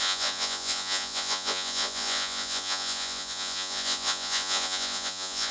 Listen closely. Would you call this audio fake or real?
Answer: fake